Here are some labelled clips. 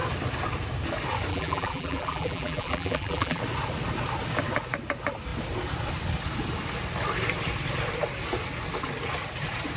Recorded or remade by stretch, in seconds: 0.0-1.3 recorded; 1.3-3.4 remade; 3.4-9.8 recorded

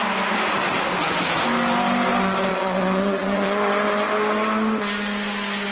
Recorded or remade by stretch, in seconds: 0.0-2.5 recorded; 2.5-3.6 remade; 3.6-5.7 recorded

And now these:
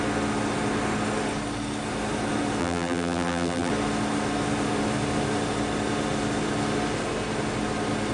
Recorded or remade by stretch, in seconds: 0.0-2.6 recorded; 2.6-3.7 remade; 3.7-8.1 recorded

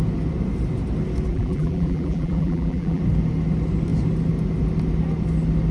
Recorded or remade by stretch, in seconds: 0.0-1.3 recorded; 1.3-3.0 remade; 3.0-5.7 recorded

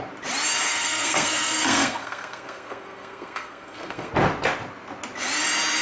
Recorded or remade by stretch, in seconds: 0.0-0.7 recorded; 0.7-4.1 remade; 4.1-5.8 recorded